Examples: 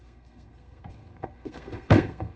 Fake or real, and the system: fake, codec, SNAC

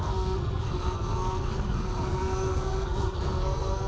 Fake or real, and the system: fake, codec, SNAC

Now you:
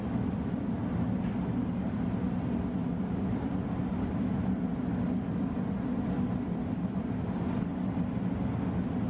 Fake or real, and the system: real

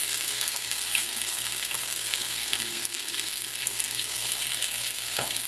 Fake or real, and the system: fake, codec, SNAC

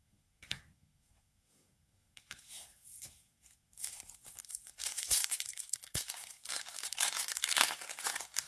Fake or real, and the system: fake, codec, SNAC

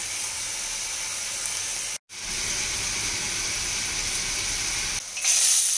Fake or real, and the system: real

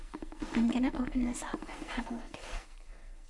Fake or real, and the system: fake, codec, SNAC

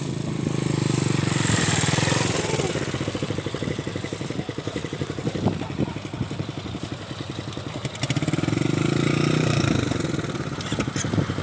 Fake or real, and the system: real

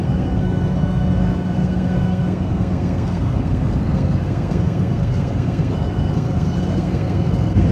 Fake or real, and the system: fake, codec, SNAC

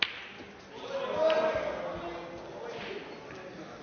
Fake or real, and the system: real